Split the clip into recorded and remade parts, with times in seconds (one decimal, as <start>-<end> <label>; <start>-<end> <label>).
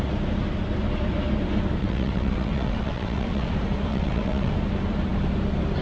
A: 0.0-1.8 recorded; 1.8-3.5 remade; 3.5-3.9 recorded; 3.9-4.5 remade; 4.5-5.8 recorded